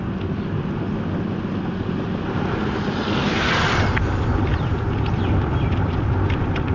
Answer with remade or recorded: recorded